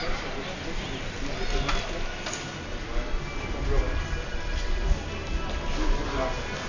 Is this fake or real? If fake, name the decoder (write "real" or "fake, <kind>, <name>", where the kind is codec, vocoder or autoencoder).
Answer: real